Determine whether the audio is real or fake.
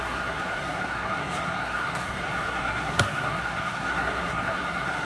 fake